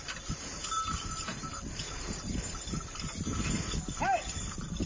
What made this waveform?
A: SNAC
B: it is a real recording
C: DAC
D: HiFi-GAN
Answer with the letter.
B